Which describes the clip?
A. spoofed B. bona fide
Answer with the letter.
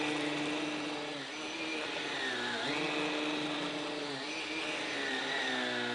B